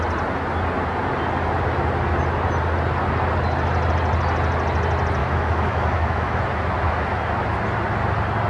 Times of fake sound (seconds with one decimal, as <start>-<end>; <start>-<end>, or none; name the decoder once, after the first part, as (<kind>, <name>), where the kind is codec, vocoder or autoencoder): 5.2-6.4 (autoencoder, DAC-VAE)